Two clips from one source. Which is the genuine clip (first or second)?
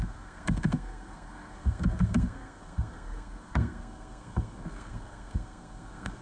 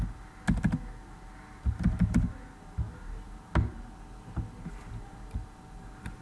second